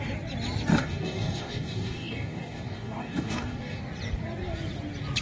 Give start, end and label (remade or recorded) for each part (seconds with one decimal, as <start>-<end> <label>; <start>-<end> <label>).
0.0-0.7 recorded; 0.7-3.8 remade; 3.8-5.2 recorded